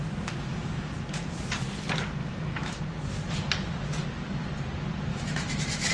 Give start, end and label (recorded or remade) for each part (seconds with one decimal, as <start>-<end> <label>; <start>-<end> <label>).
0.0-2.2 recorded; 2.2-2.8 remade; 2.8-5.1 recorded; 5.1-5.9 remade